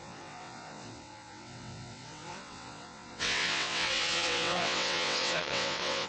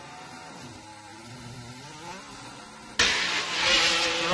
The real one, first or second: second